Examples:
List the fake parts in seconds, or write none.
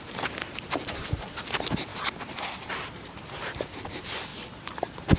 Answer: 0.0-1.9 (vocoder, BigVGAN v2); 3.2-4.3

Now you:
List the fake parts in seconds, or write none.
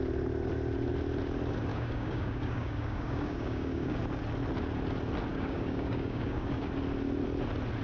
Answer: 1.7-4.0 (codec, DAC); 5.3-6.7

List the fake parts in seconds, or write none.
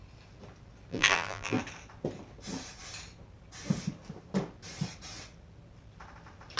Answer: 0.9-1.6 (vocoder, BigVGAN v2)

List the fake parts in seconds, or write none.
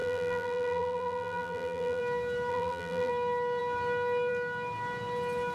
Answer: 0.0-2.0 (vocoder, BigVGAN v2); 2.5-3.1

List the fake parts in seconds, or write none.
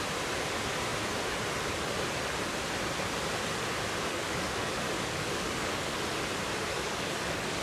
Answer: 4.1-6.0 (codec, DAC); 6.7-7.6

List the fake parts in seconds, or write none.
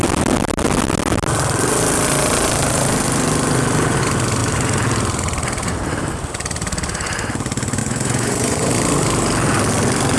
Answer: 7.8-8.7 (vocoder, Vocos)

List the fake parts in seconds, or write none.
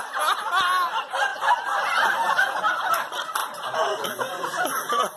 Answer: none